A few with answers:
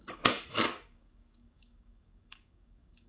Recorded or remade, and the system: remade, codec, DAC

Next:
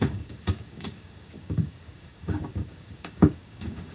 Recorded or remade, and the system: remade, codec, DAC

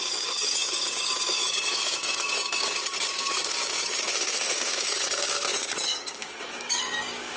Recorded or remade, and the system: remade, codec, DAC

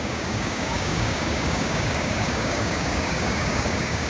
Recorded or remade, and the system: remade, codec, DAC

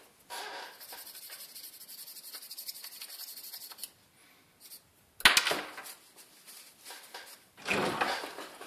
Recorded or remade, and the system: recorded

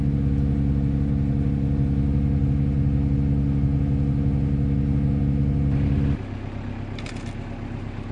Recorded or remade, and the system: recorded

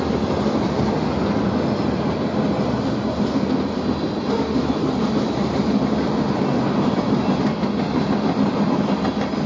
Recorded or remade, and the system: recorded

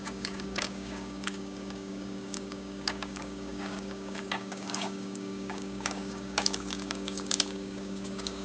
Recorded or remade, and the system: remade, codec, DAC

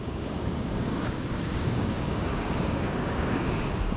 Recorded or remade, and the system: remade, codec, DAC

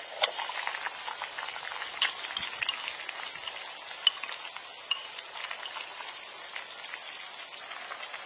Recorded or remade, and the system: recorded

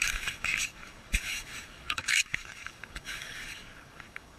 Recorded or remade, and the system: remade, codec, DAC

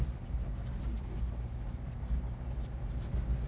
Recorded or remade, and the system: recorded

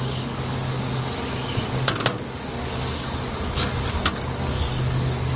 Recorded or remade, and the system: remade, codec, DAC